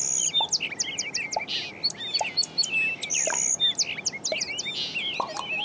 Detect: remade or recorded recorded